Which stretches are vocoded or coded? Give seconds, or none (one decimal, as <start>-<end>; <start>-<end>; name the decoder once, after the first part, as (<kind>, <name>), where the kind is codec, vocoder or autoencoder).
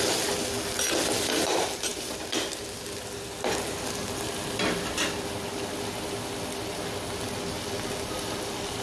none